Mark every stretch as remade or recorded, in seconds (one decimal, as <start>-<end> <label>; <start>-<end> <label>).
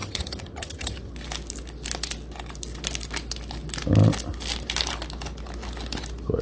0.0-1.1 remade; 1.1-6.4 recorded